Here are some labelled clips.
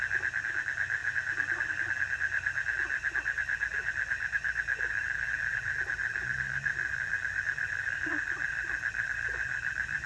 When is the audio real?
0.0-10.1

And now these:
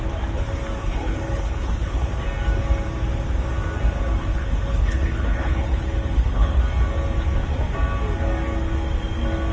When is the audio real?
0.0-0.8; 2.1-4.3; 6.6-9.5

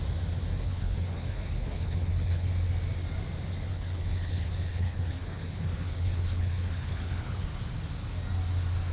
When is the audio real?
0.0-0.5; 2.5-3.7; 7.6-8.9

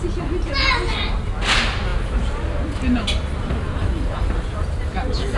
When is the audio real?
0.0-5.4

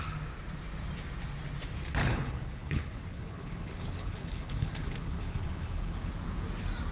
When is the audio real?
0.0-2.0; 6.1-6.9

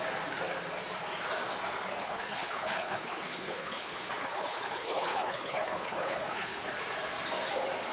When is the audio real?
0.0-2.0; 6.7-7.9

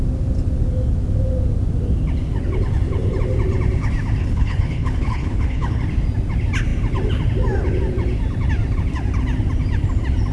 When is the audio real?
0.0-4.2; 5.8-10.3